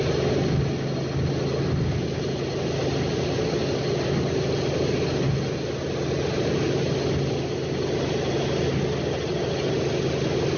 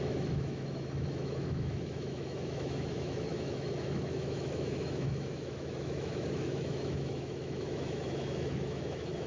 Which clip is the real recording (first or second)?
first